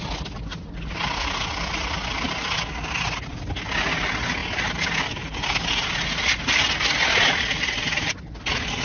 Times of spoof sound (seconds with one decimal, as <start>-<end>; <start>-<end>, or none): none